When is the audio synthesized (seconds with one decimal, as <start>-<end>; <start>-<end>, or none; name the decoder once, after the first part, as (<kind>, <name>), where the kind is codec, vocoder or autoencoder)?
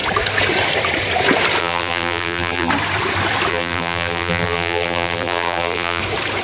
1.6-2.7 (vocoder, BigVGAN v2); 3.5-6.0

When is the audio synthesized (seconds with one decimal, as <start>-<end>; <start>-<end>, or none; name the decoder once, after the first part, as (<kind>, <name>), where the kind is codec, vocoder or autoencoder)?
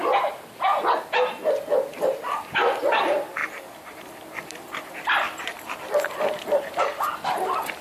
3.4-6.8 (vocoder, BigVGAN v2)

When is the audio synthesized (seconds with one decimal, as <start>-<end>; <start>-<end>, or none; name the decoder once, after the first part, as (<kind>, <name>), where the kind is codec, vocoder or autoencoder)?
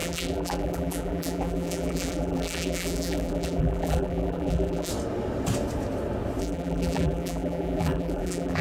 0.0-4.9 (vocoder, BigVGAN v2); 6.4-8.6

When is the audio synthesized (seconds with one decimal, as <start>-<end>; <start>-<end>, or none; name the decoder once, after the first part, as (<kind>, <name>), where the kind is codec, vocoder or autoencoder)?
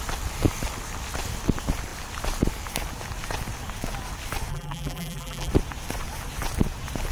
4.5-5.5 (vocoder, BigVGAN v2)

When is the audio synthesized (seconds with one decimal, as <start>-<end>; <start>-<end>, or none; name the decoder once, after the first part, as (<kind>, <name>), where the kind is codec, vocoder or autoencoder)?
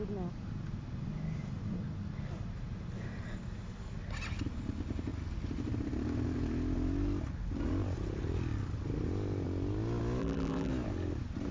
10.2-10.7 (vocoder, BigVGAN v2)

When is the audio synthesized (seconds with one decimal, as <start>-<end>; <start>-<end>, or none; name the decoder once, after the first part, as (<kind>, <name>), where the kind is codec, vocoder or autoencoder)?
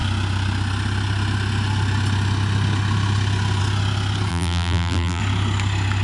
4.3-5.2 (vocoder, BigVGAN v2)